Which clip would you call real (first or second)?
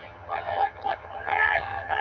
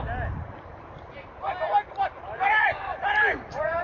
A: second